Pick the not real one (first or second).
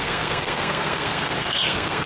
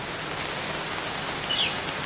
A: first